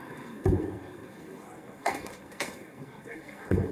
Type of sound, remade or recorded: remade